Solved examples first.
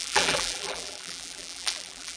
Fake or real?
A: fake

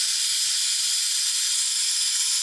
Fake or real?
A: real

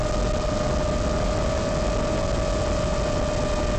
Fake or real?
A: real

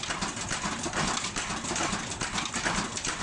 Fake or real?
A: real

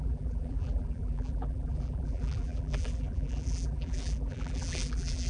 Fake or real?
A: fake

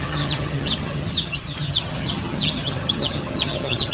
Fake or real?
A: fake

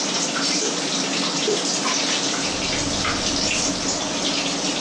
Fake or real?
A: real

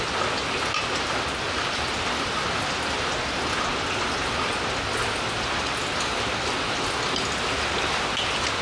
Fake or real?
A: real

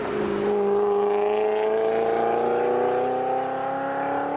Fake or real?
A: real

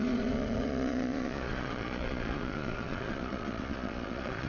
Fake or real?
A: fake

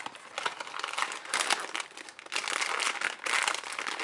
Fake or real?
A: real